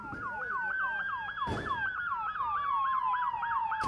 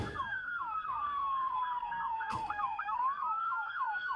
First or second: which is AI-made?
second